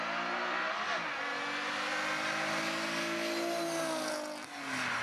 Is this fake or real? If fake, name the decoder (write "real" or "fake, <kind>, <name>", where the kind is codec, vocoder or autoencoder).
real